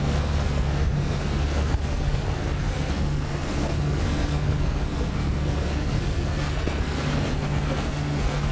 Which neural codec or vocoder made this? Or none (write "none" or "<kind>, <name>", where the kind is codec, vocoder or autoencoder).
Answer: codec, SNAC